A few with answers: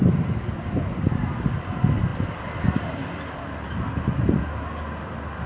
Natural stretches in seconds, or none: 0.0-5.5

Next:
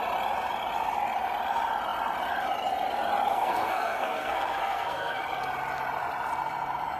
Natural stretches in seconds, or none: 0.0-3.3; 5.2-7.0

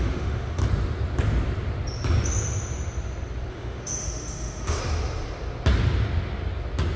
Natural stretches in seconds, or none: 0.6-3.5; 4.8-7.0

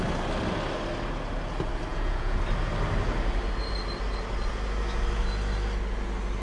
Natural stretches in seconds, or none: 0.0-1.9; 2.4-6.4